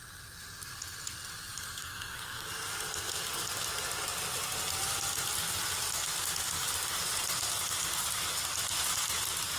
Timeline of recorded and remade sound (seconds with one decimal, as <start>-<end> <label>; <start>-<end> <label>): 0.0-1.8 recorded; 1.8-2.5 remade; 2.5-9.6 recorded